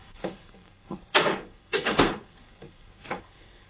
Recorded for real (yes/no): no